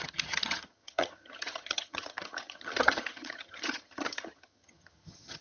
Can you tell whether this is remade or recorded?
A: remade